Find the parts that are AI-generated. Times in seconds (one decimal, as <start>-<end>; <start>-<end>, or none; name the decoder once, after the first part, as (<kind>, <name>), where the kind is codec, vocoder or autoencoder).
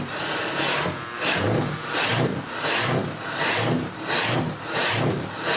0.0-5.6 (vocoder, BigVGAN v2)